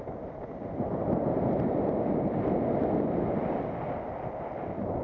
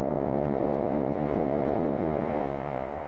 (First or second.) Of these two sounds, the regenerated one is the second